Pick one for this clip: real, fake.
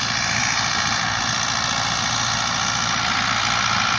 real